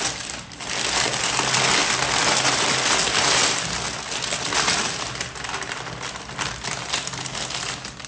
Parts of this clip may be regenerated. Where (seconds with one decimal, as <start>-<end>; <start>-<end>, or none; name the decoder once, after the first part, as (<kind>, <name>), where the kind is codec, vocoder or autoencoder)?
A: none